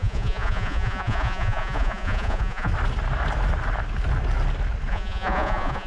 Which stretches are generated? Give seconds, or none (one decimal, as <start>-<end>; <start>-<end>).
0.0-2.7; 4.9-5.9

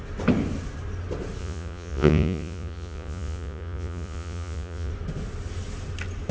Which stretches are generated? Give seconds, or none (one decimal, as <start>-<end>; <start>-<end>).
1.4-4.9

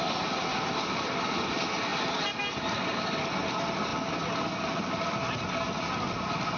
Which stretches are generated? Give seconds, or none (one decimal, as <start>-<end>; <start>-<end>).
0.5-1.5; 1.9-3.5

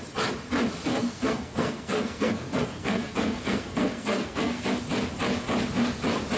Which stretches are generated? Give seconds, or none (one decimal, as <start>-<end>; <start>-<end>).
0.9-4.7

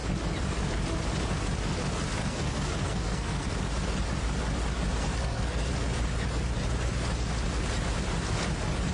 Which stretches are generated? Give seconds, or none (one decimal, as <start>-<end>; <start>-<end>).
2.2-3.5; 5.0-5.7

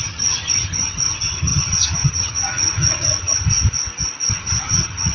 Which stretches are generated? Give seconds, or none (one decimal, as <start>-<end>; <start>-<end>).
0.0-3.4; 4.3-5.1

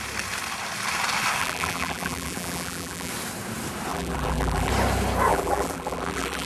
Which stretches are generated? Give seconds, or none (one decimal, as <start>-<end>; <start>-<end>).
1.4-3.1; 3.9-4.7; 5.3-6.5